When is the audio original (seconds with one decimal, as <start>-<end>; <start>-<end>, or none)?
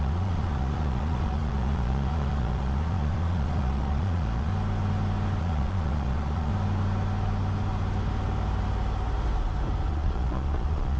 4.5-5.4; 6.5-9.9